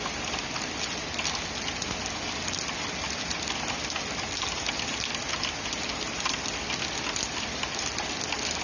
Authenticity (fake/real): real